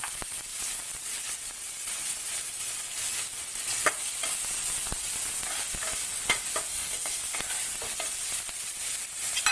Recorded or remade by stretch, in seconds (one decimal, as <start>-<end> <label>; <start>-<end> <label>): 0.0-6.7 recorded; 6.7-7.2 remade; 7.2-9.5 recorded